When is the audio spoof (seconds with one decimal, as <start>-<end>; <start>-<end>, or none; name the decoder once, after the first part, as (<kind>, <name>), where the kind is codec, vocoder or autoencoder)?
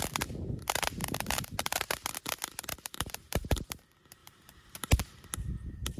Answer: 1.0-1.9 (vocoder, BigVGAN v2); 2.7-3.8; 4.2-5.0